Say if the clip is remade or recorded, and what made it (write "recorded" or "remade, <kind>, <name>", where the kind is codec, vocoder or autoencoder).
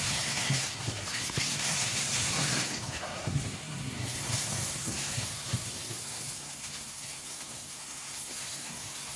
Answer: remade, codec, SNAC